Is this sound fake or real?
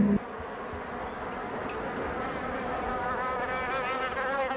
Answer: real